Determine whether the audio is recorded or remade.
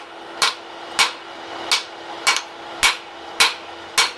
recorded